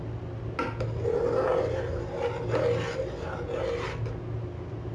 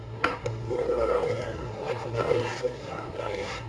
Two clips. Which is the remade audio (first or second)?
second